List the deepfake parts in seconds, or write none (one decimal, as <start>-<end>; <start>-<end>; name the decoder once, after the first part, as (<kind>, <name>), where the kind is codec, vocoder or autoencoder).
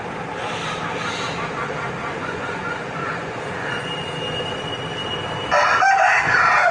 2.0-3.9 (vocoder, Vocos)